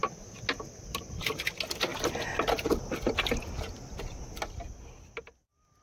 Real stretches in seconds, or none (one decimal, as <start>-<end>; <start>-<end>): 0.0-1.9; 2.8-5.8